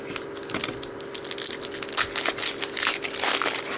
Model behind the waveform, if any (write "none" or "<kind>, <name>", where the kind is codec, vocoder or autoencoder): none